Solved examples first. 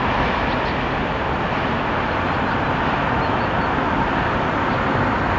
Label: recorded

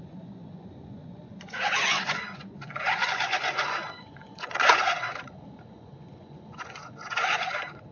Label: remade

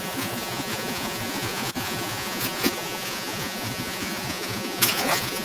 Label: remade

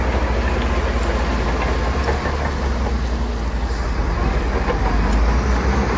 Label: recorded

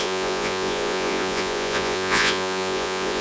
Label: remade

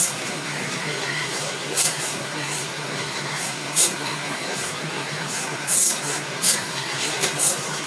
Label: remade